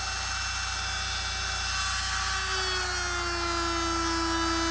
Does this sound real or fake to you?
real